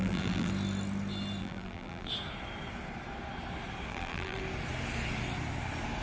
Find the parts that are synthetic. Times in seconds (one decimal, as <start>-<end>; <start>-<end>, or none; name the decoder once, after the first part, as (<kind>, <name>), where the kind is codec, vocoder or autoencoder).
0.0-0.5 (vocoder, BigVGAN v2); 1.4-2.1; 3.9-4.4